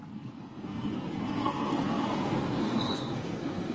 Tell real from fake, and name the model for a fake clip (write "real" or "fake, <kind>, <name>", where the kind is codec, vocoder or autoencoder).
fake, codec, SNAC